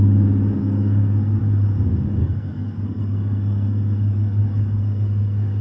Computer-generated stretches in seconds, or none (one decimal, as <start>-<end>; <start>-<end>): 0.6-1.4; 2.2-5.6